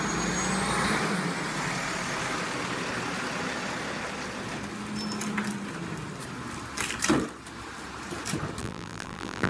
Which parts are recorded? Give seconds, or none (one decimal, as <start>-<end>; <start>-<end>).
0.0-8.6